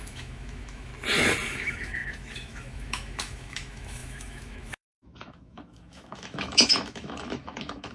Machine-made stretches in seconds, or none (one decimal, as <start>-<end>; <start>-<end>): 0.0-0.9; 1.5-7.9